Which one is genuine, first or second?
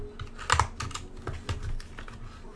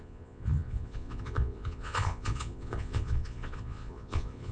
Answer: first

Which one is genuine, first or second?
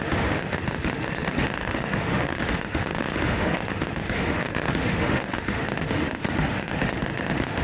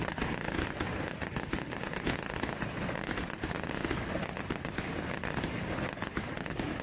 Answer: second